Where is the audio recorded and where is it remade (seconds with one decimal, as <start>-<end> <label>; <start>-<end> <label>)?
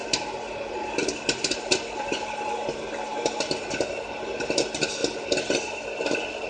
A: 0.0-3.1 remade; 3.1-4.1 recorded; 4.1-5.0 remade; 5.0-5.5 recorded; 5.5-6.5 remade